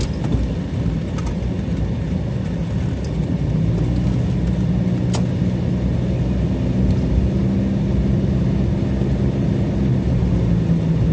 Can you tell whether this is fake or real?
real